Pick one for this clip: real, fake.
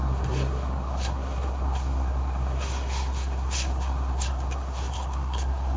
fake